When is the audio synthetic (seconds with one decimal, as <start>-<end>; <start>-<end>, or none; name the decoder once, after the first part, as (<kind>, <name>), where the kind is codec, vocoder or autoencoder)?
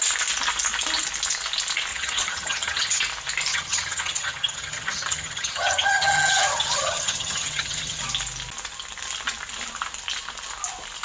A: 1.9-3.0 (vocoder, HiFi-GAN); 3.5-8.0